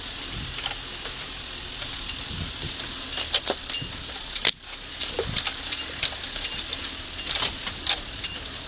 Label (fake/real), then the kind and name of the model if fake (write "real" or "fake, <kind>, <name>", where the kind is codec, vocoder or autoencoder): fake, vocoder, BigVGAN v2